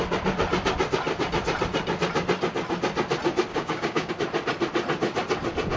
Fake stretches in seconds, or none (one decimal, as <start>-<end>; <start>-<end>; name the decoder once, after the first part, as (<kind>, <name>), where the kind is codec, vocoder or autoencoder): 3.5-4.1 (codec, DAC)